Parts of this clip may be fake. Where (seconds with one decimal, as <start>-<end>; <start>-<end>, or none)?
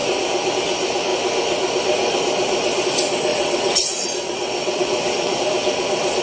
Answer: 3.3-5.4